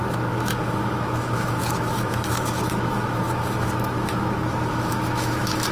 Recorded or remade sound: remade